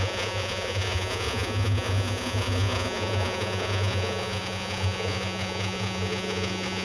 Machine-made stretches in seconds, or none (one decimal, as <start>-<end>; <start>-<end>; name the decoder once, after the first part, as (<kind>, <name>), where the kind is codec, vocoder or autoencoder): 0.0-6.8 (vocoder, Vocos)